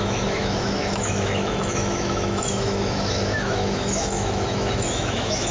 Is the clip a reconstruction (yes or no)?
yes